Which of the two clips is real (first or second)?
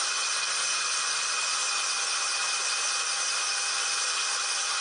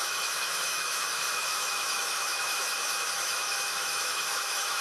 first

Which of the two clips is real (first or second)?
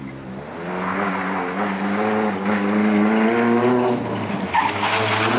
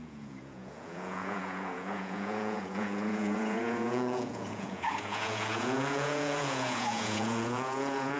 first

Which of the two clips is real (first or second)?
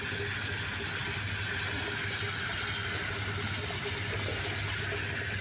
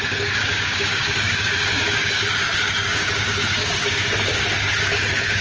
first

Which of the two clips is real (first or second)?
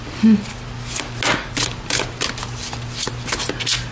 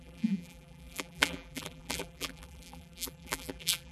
first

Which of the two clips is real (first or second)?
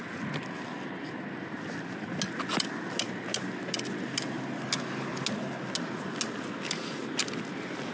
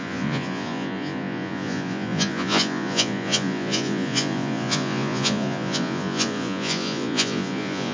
first